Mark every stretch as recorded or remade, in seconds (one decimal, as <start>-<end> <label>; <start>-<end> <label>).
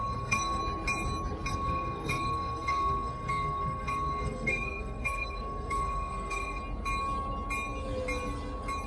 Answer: 0.0-0.6 remade; 0.6-1.5 recorded; 1.5-6.6 remade; 6.6-8.9 recorded